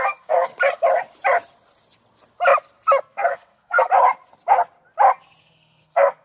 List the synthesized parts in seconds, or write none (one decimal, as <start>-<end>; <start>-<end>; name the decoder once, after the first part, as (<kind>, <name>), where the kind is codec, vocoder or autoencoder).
0.0-0.5 (codec, SNAC); 3.0-3.9; 5.4-6.2